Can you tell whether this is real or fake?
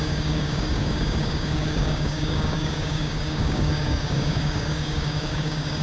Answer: fake